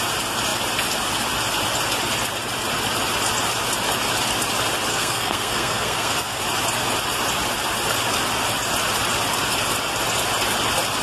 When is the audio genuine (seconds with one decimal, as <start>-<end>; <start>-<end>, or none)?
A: 0.0-4.9; 6.4-11.0